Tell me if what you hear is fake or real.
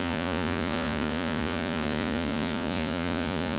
fake